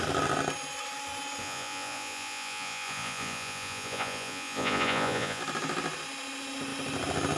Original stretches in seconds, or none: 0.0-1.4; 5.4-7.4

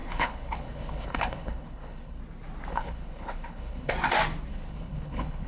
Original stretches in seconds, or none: 2.2-2.7; 3.9-4.5

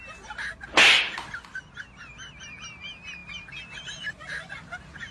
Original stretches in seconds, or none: 0.0-5.1

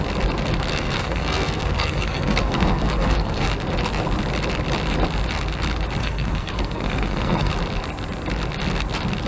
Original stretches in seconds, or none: 0.0-0.7; 3.5-6.0; 7.5-9.3

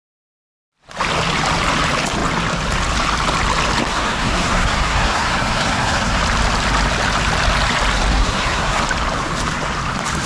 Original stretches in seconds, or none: 0.0-3.9; 6.2-8.1; 8.8-10.3

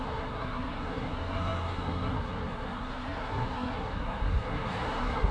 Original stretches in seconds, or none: none

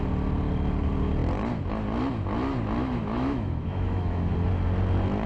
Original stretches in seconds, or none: 0.0-2.8; 4.3-5.3